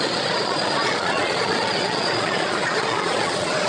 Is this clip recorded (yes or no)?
no